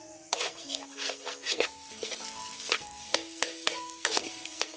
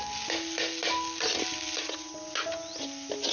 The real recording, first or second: second